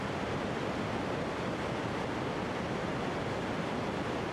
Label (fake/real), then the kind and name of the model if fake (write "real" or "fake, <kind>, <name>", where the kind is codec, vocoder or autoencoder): real